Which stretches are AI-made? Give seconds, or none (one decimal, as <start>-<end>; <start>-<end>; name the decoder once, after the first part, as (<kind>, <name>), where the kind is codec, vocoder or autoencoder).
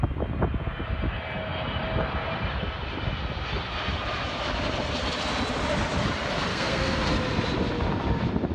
6.5-7.1 (codec, SNAC)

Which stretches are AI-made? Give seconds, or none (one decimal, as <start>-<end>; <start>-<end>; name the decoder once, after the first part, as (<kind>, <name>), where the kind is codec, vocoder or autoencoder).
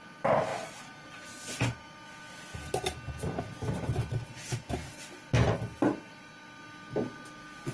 none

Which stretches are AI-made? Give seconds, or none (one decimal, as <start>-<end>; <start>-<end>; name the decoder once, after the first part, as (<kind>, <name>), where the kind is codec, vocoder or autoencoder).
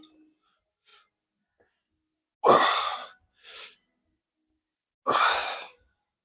5.4-6.2 (vocoder, BigVGAN v2)